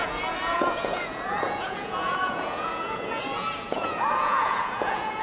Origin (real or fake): fake